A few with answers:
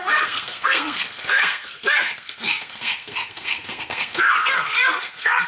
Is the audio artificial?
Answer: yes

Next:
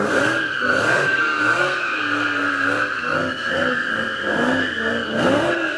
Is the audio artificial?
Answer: yes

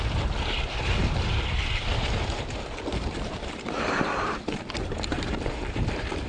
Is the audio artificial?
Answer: yes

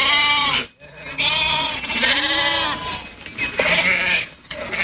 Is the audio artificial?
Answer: no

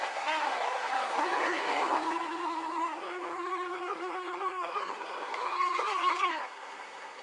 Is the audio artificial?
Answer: yes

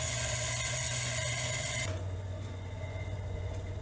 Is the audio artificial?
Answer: yes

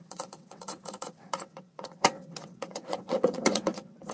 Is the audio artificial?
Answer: yes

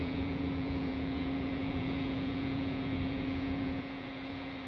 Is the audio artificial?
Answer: yes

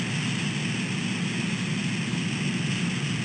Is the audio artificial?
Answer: no